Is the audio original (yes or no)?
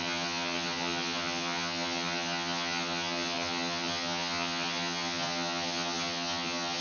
no